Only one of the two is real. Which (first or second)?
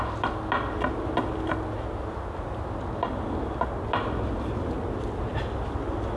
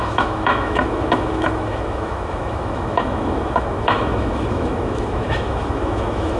first